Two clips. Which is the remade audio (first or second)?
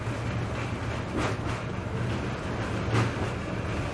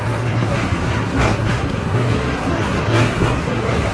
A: second